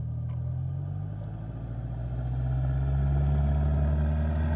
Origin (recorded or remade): recorded